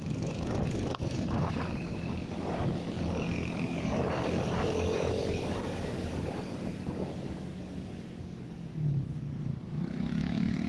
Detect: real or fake fake